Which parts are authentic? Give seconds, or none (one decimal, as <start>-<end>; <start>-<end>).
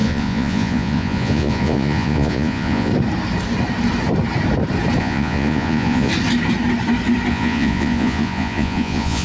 2.9-5.0; 6.1-7.3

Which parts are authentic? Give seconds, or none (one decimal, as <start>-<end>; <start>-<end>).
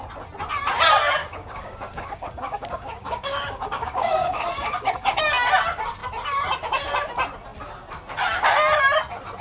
0.0-1.2; 5.2-9.4